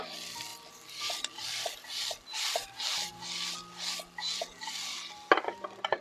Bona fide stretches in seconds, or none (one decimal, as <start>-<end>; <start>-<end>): 0.0-0.5; 3.1-6.0